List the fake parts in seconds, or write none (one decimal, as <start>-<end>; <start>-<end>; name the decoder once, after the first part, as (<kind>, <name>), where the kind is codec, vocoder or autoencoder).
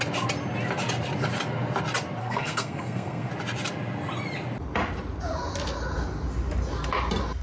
2.2-3.3 (codec, SNAC)